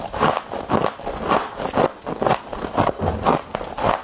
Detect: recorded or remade recorded